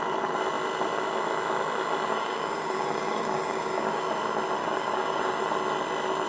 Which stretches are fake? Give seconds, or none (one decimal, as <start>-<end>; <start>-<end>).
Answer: 2.1-4.0; 4.6-5.4